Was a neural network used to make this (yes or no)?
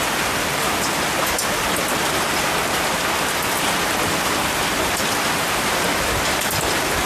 no